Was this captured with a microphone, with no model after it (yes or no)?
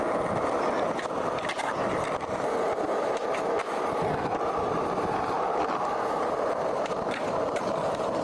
yes